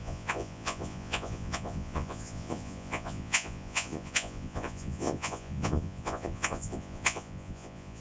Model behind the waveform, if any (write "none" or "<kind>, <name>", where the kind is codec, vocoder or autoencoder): vocoder, Vocos